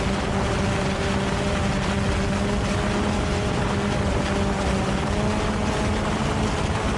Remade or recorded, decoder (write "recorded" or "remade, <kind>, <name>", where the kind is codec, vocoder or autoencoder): recorded